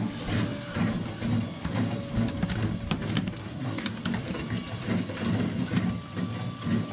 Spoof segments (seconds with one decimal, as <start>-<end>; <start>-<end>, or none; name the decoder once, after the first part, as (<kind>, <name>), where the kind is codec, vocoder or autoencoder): 3.4-4.0 (codec, SNAC)